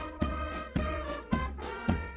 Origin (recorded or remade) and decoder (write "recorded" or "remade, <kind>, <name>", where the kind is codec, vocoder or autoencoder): remade, vocoder, WaveNeXt